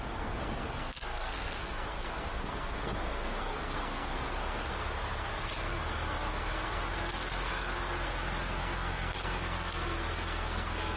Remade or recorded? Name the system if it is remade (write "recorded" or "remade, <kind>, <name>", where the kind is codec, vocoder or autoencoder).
remade, codec, SNAC